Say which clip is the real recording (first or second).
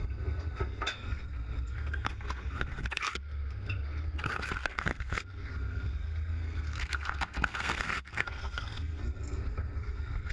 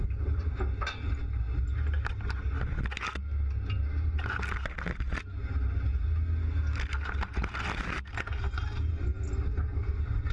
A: second